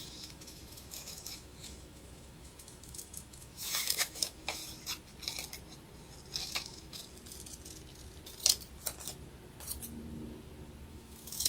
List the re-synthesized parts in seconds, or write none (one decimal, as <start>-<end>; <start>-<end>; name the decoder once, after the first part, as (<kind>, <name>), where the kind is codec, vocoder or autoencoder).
0.0-4.6 (autoencoder, DAC-VAE); 6.4-7.0; 10.9-11.5